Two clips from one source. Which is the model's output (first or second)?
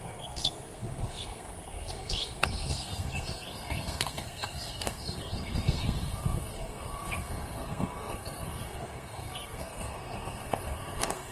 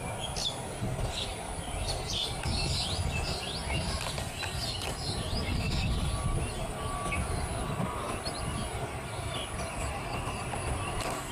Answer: first